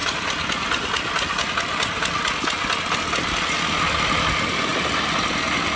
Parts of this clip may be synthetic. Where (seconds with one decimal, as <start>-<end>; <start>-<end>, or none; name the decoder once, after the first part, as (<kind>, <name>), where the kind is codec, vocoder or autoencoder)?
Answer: none